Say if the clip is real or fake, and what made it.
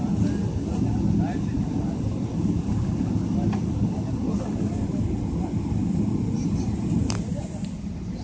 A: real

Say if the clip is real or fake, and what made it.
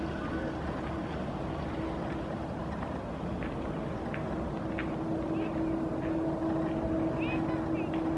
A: real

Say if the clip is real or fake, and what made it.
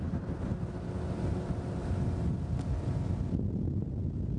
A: real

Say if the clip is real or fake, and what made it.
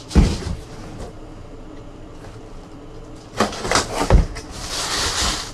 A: real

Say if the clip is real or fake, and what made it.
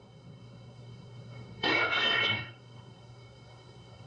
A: fake, codec, SNAC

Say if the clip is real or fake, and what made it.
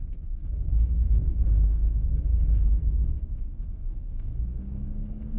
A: fake, codec, SNAC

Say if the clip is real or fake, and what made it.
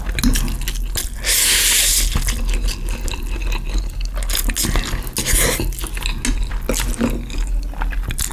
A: real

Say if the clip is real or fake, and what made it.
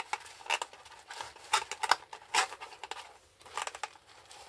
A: real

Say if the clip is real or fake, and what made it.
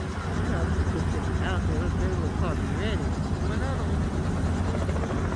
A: real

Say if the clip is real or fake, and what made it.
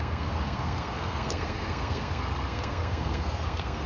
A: fake, codec, SNAC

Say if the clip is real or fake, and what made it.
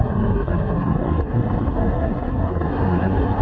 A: fake, codec, SNAC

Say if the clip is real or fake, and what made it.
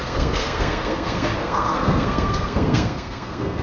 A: fake, codec, SNAC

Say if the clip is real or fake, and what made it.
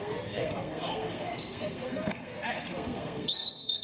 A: fake, codec, SNAC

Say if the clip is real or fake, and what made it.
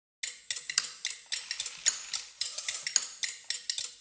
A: real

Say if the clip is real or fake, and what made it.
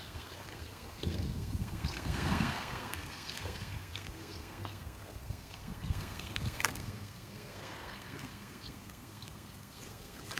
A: fake, codec, SNAC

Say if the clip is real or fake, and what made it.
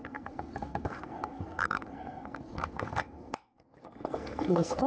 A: fake, codec, SNAC